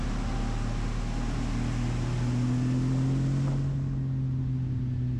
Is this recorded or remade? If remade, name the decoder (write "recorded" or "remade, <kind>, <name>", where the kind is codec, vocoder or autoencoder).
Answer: recorded